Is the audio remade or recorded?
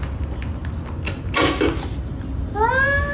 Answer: recorded